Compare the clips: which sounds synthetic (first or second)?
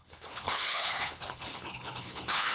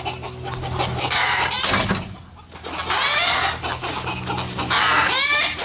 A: first